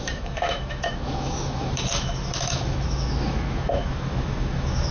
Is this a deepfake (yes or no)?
yes